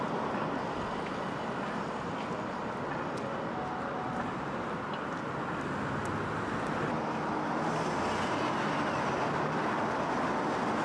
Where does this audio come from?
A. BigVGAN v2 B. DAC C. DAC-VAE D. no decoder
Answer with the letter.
D